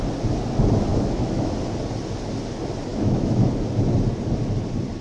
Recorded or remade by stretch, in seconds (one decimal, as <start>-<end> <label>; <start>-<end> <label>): 0.0-0.9 recorded; 0.9-1.5 remade; 1.5-2.9 recorded; 2.9-3.5 remade; 3.5-5.0 recorded